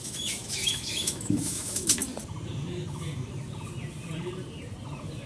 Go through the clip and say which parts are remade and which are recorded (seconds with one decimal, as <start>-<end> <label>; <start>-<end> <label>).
0.0-2.0 remade; 2.0-5.3 recorded